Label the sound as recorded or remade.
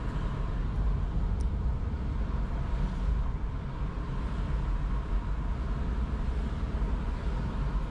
recorded